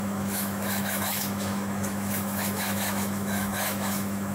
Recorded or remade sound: remade